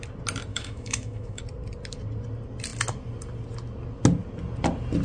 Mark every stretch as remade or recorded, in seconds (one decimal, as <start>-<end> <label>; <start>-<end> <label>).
0.0-0.5 recorded; 0.5-1.4 remade; 1.4-5.0 recorded